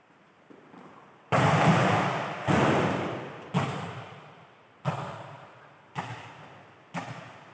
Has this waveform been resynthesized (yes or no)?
no